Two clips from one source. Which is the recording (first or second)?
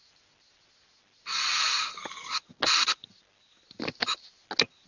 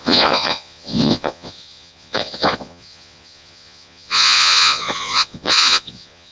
first